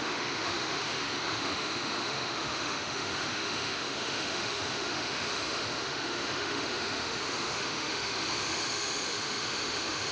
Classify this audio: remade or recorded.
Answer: remade